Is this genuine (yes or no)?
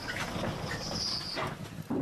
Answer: yes